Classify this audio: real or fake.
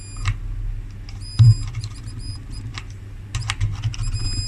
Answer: real